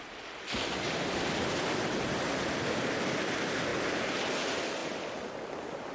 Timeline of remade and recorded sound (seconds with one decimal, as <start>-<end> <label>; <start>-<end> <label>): 0.0-5.9 recorded